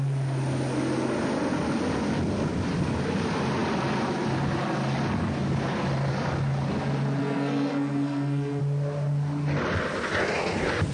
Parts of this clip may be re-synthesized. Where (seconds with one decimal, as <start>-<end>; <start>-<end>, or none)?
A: 7.2-8.6